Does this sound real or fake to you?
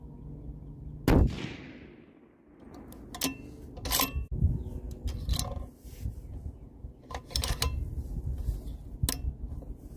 real